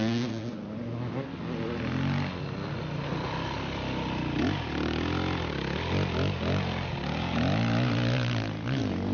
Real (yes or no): yes